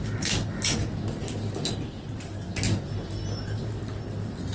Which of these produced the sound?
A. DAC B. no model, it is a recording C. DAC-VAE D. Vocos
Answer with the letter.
B